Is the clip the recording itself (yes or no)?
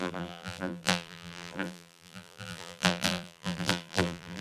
no